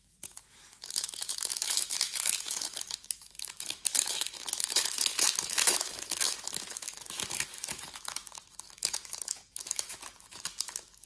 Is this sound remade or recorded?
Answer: remade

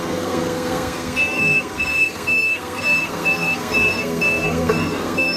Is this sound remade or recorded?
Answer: remade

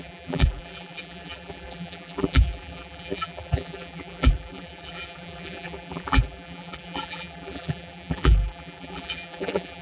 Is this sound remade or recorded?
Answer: remade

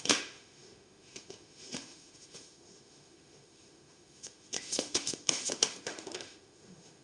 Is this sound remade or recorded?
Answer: remade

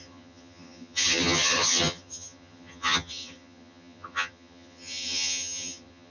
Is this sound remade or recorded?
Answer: remade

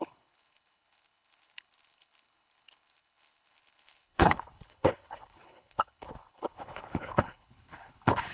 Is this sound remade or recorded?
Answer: remade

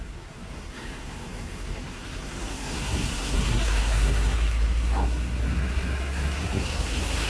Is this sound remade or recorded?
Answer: remade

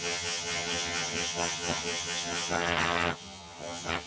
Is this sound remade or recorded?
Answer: remade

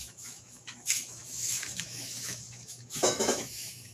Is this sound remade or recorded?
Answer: remade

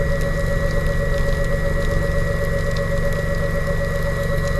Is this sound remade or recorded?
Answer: recorded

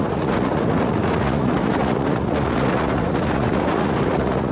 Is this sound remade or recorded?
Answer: remade